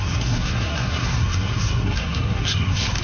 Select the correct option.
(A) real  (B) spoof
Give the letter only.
B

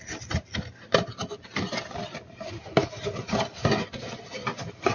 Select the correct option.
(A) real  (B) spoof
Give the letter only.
A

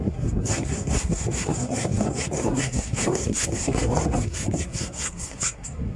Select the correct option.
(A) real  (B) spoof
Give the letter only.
B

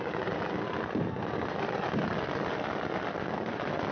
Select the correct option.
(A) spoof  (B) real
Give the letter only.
B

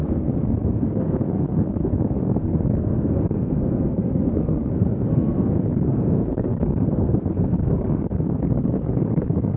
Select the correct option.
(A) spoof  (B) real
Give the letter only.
A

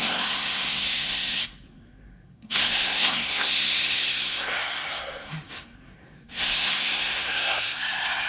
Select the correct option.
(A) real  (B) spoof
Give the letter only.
B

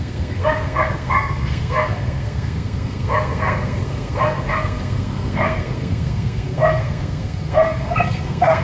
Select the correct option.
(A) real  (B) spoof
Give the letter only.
B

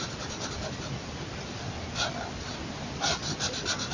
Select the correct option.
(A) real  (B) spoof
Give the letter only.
A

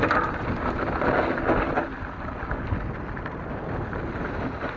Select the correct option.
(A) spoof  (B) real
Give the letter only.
B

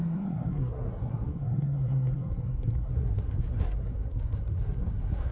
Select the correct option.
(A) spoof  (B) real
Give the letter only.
A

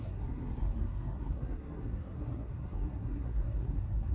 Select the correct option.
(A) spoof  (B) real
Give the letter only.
A